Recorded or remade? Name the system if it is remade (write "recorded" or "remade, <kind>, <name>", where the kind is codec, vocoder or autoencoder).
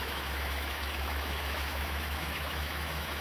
remade, autoencoder, DAC-VAE